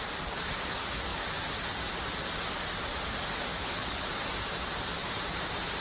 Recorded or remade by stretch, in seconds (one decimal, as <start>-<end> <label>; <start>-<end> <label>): 0.0-3.5 recorded; 3.5-4.1 remade; 4.1-5.8 recorded